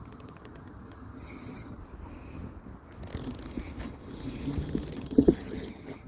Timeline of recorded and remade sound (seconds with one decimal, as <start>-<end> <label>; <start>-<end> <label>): 0.0-1.8 remade; 1.8-4.9 recorded; 4.9-6.1 remade